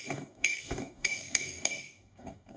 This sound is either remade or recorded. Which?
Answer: remade